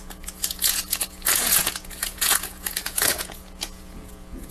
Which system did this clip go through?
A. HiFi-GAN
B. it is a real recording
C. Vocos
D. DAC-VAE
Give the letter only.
C